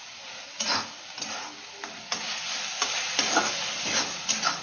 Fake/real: real